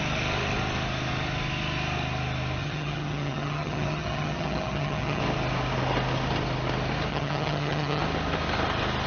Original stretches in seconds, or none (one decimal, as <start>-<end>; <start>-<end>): 0.0-2.6; 5.2-7.1; 8.0-9.1